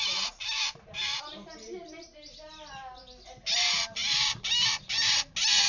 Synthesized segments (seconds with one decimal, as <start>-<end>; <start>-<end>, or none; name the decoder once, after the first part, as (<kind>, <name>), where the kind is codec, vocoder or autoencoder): none